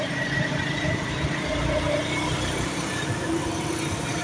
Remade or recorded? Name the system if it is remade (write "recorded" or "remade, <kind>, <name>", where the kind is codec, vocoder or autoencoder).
remade, vocoder, BigVGAN v2